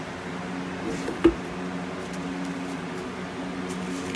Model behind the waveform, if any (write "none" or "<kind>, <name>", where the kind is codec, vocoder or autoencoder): none